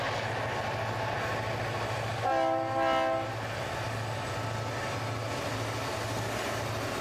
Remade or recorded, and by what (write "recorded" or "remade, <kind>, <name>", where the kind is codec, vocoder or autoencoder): recorded